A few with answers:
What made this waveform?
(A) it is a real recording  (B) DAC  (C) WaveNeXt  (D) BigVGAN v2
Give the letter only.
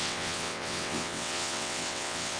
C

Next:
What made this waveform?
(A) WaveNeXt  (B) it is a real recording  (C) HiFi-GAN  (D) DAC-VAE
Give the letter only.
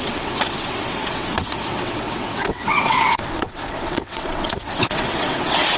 A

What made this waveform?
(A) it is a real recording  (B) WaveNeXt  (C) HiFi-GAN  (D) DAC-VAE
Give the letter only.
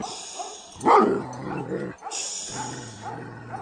A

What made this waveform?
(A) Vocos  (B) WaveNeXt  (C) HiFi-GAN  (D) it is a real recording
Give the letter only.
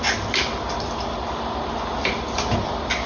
D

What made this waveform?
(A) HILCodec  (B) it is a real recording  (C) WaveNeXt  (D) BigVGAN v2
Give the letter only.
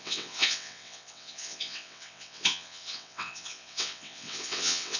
C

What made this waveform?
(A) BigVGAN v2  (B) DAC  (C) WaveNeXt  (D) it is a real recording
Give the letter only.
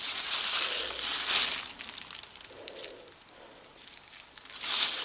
D